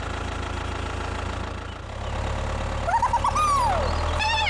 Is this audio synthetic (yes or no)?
no